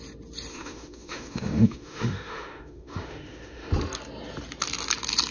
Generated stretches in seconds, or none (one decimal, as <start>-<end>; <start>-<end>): 0.5-3.7